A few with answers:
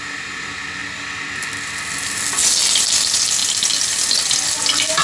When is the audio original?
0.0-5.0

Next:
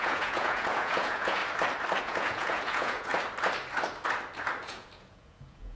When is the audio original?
1.4-2.0; 3.1-4.6

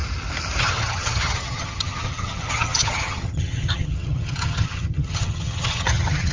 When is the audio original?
0.0-0.6

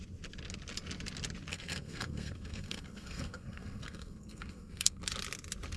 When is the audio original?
0.0-1.5; 5.0-5.8

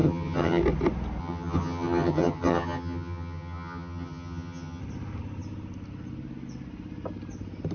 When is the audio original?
0.6-1.2; 4.8-7.7

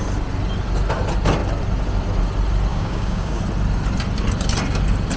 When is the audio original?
0.0-2.7; 3.4-5.2

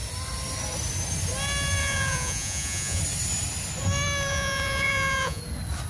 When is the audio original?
0.0-1.8; 3.0-4.3; 5.4-5.9